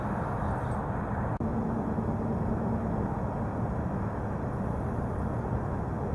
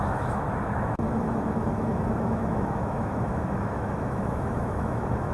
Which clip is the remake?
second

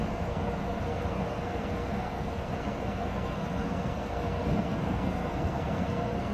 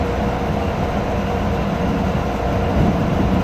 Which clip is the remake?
first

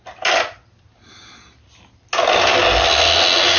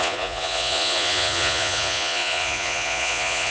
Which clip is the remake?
second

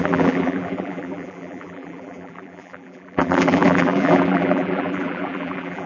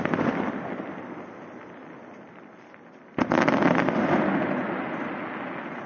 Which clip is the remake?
first